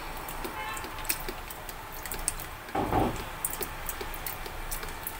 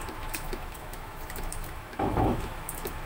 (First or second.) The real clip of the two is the first